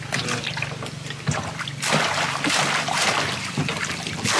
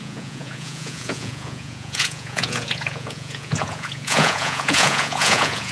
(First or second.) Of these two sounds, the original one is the first